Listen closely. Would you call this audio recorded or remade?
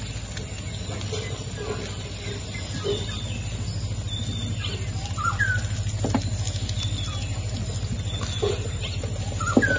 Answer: recorded